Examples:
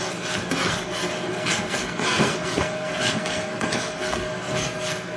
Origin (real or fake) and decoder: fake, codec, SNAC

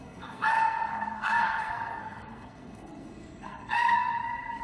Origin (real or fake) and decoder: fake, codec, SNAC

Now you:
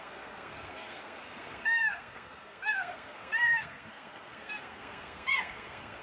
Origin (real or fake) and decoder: fake, codec, SNAC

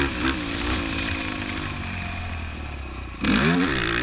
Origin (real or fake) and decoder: real